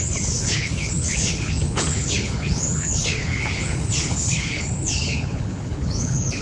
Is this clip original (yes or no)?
no